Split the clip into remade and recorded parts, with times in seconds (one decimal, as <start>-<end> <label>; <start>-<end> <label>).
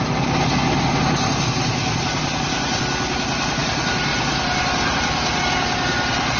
0.0-6.4 recorded